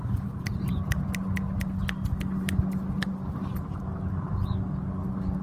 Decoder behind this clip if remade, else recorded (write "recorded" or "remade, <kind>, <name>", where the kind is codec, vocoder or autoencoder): recorded